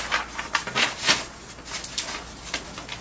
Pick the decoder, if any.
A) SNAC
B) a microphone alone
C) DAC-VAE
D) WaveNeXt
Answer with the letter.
B